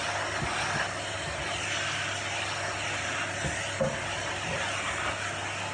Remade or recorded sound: recorded